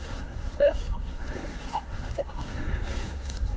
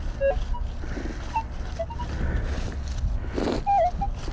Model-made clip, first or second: first